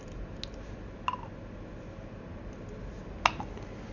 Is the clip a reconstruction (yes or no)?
no